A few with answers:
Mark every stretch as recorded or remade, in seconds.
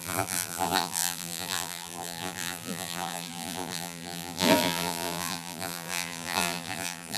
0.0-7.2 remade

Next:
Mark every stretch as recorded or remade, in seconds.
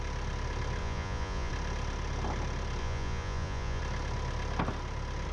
0.0-0.8 recorded; 0.8-1.5 remade; 1.5-2.8 recorded; 2.8-3.8 remade; 3.8-5.3 recorded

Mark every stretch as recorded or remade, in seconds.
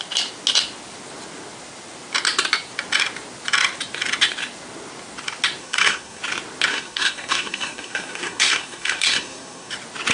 0.0-5.6 recorded; 5.6-6.2 remade; 6.2-6.7 recorded; 6.7-9.7 remade; 9.7-10.1 recorded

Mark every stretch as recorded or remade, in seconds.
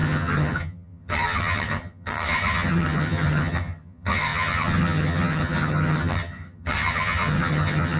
0.0-8.0 remade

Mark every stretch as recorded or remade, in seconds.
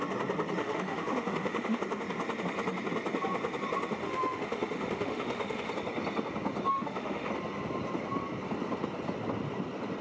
0.0-0.6 recorded; 0.6-1.8 remade; 1.8-4.0 recorded; 4.0-5.7 remade; 5.7-6.7 recorded; 6.7-7.3 remade; 7.3-10.0 recorded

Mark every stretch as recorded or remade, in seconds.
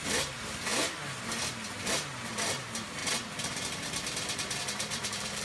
0.0-0.7 remade; 0.7-1.9 recorded; 1.9-5.4 remade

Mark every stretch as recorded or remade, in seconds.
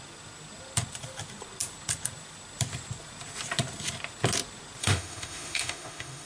0.0-4.8 recorded; 4.8-6.3 remade